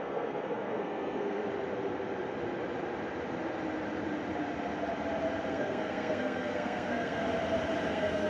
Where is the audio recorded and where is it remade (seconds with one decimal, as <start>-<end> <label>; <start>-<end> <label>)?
0.0-1.4 remade; 1.4-5.5 recorded; 5.5-7.2 remade; 7.2-7.9 recorded; 7.9-8.3 remade